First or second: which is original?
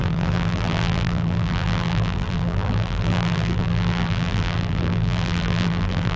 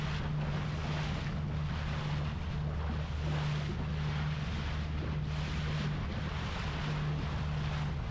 second